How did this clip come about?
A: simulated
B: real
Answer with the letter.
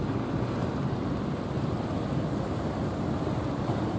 B